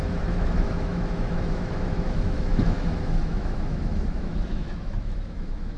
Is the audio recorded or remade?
remade